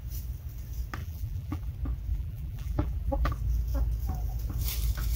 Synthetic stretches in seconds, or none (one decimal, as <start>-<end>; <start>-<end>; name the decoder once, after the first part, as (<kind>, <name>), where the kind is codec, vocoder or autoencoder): 1.0-1.7 (vocoder, BigVGAN v2); 2.1-3.3